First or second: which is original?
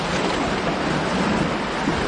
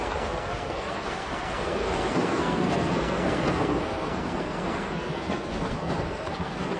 first